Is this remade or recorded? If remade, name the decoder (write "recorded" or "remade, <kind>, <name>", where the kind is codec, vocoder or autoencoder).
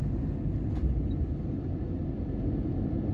recorded